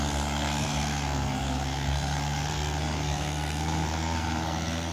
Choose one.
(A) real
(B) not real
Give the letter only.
B